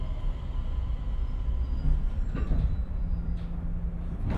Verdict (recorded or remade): recorded